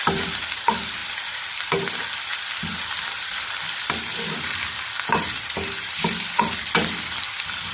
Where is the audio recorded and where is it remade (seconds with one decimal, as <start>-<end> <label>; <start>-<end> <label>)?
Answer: 0.0-7.7 recorded